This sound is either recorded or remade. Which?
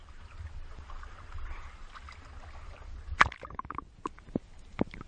recorded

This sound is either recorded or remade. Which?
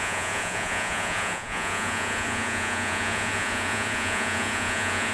remade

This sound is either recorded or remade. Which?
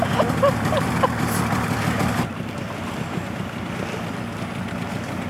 recorded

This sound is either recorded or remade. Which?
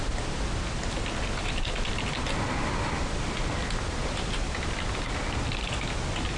recorded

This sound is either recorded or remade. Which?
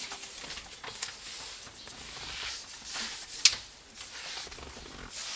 recorded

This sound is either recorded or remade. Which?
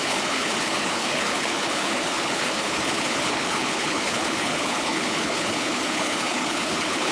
remade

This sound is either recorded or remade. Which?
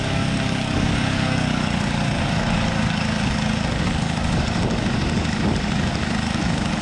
remade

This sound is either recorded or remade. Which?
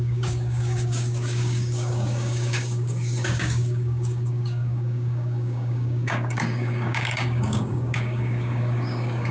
remade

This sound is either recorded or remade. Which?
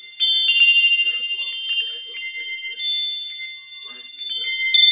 recorded